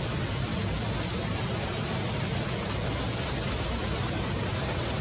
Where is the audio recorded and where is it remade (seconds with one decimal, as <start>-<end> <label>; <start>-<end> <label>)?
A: 0.0-0.5 remade; 0.5-3.5 recorded; 3.5-5.0 remade